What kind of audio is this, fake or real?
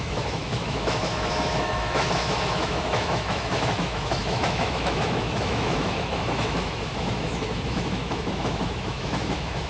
fake